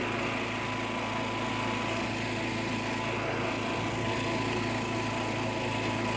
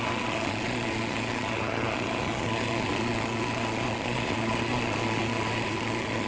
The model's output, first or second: second